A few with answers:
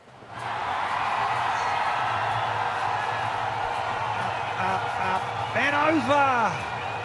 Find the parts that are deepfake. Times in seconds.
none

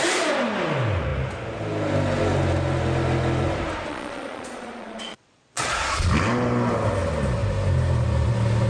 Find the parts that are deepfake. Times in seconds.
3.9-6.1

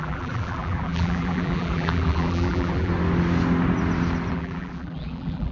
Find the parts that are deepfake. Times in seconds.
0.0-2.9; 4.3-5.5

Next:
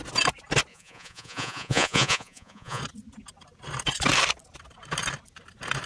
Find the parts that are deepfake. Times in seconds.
0.7-2.8